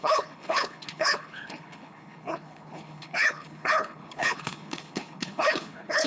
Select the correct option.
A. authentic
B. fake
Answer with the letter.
B